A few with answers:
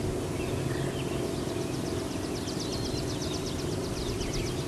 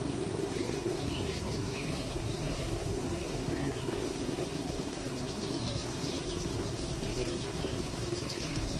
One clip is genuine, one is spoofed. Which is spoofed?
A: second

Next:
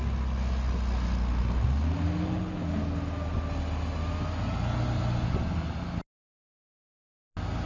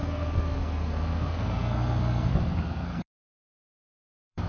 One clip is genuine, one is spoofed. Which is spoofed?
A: second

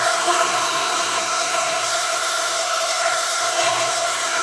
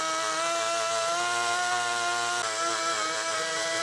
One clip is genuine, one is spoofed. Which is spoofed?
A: first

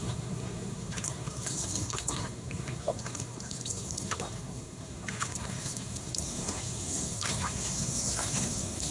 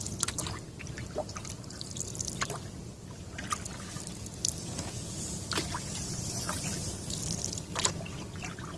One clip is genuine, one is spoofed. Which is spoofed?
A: first